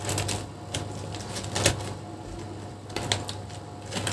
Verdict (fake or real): real